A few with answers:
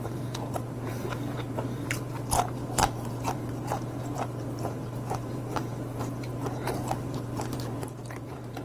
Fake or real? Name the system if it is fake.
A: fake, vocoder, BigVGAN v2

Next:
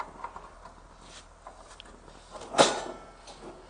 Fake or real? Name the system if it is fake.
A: real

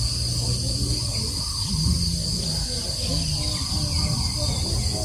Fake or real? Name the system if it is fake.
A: real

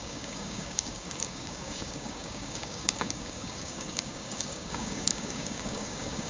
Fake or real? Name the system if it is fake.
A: fake, codec, DAC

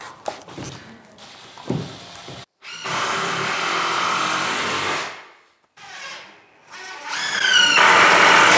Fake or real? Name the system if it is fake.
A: real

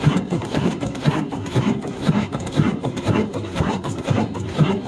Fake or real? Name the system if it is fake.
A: fake, codec, SNAC